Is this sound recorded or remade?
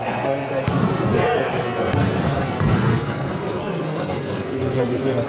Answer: remade